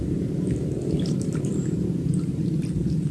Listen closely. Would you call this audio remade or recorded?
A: remade